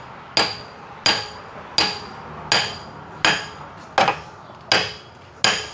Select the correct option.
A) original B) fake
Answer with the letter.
A